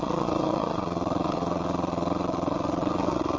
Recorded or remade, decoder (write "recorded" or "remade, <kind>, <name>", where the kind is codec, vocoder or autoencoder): remade, vocoder, WaveNeXt